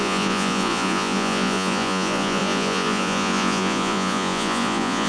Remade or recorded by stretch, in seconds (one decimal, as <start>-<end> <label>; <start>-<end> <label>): 0.0-5.1 remade